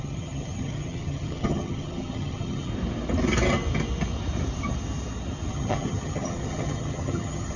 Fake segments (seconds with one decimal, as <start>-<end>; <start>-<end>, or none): 0.0-2.7; 5.5-7.6